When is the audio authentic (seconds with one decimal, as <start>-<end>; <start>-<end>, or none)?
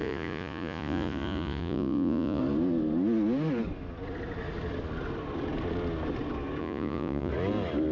2.4-6.6; 7.3-7.9